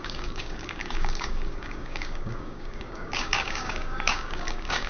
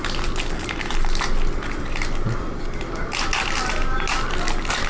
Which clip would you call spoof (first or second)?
first